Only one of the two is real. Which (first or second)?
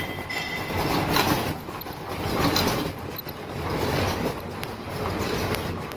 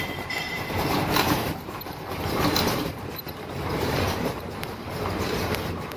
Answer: first